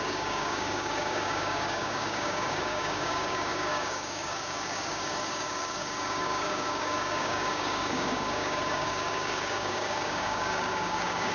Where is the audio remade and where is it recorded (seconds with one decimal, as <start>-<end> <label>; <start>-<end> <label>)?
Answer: 0.0-11.3 remade